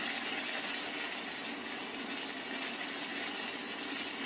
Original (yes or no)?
yes